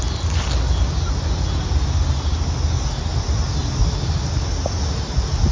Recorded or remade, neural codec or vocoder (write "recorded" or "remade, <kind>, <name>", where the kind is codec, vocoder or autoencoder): recorded